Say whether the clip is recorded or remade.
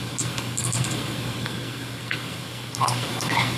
remade